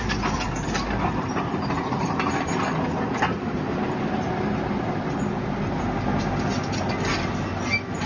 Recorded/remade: recorded